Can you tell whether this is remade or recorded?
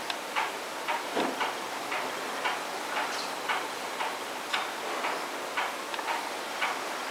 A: recorded